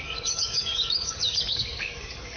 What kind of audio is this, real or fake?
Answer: fake